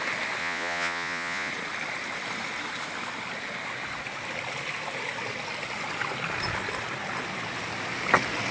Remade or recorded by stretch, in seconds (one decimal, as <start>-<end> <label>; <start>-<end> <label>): 0.0-0.4 recorded; 0.4-1.5 remade; 1.5-8.5 recorded